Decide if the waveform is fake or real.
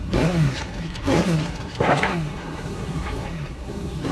fake